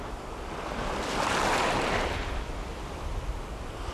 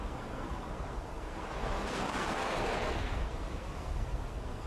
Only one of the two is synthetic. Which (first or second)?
second